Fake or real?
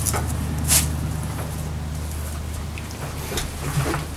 real